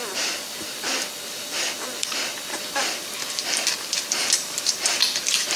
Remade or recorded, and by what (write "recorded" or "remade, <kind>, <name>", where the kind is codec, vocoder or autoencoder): remade, vocoder, BigVGAN v2